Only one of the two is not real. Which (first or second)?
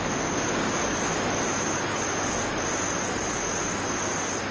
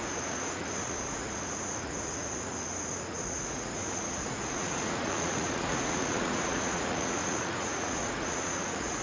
second